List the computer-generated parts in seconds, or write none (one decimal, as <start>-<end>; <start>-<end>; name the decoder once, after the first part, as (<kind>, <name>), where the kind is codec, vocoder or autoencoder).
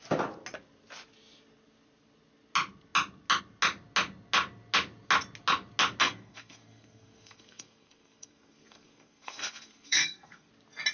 6.0-10.5 (codec, SNAC)